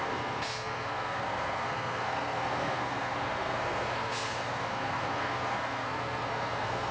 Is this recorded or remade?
remade